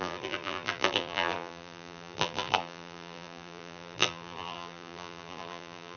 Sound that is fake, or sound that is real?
fake